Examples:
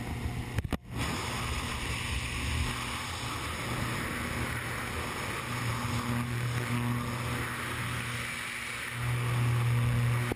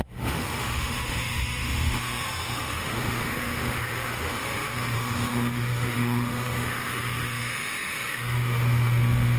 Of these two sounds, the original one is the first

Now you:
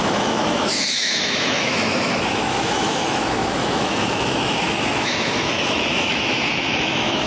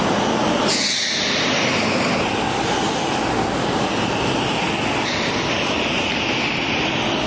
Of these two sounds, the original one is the second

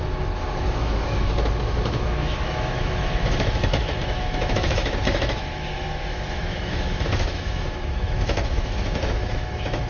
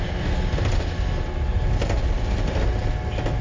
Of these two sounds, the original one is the second